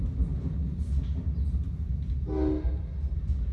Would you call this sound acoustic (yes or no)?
yes